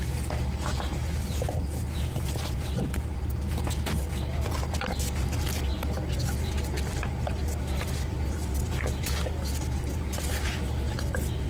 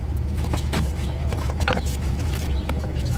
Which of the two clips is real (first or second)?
first